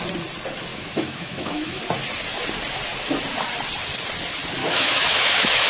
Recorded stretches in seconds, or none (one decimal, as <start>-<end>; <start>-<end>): 0.0-0.7; 1.8-4.6